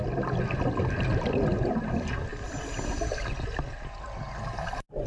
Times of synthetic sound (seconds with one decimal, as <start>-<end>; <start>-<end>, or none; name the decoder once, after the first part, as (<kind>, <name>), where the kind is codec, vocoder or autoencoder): 2.3-4.2 (vocoder, BigVGAN v2)